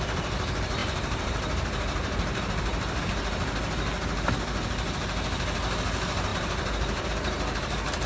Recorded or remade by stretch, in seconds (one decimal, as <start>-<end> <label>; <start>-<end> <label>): 0.0-0.8 recorded; 0.8-3.0 remade; 3.0-6.3 recorded; 6.3-7.1 remade; 7.1-8.1 recorded